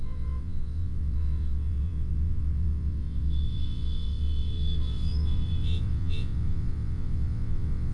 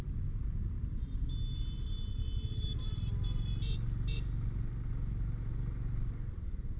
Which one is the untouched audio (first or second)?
second